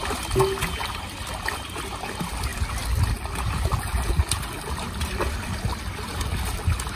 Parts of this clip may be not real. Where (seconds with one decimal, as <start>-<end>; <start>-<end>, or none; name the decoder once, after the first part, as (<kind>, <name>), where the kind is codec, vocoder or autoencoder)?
none